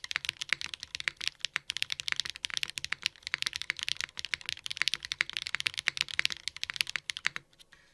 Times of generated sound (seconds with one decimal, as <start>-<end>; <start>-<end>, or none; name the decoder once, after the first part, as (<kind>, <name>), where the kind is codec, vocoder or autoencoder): none